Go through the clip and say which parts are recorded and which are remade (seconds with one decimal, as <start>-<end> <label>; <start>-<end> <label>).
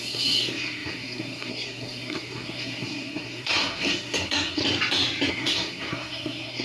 0.0-4.6 remade; 4.6-5.3 recorded; 5.3-6.6 remade